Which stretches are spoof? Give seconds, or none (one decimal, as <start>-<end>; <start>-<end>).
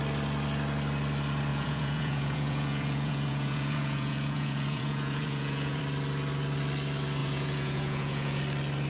1.5-5.8; 7.2-8.4